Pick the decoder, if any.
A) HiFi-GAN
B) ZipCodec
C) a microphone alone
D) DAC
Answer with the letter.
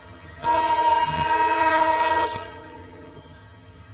A